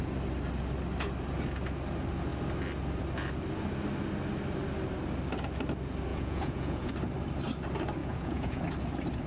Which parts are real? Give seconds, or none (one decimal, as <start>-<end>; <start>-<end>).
0.0-6.1; 6.9-8.0; 8.6-9.3